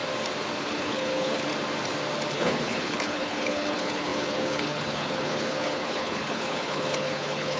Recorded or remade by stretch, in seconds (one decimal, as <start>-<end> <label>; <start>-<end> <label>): 0.0-0.6 recorded; 0.6-1.5 remade; 1.5-2.3 recorded; 2.3-7.6 remade